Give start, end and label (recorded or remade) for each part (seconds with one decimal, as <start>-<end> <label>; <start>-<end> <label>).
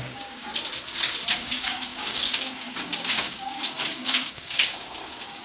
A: 0.0-0.5 remade; 0.5-1.3 recorded; 1.3-5.4 remade